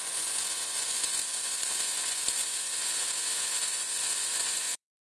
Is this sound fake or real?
fake